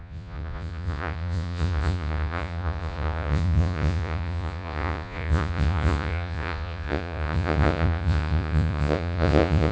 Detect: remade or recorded remade